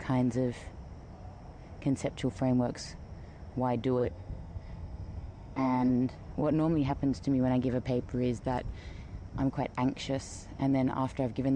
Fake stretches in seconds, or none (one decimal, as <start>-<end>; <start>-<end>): 4.0-5.9